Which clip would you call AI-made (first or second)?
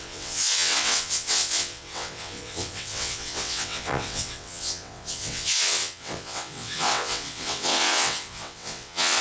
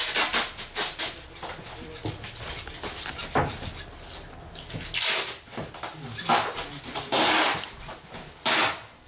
first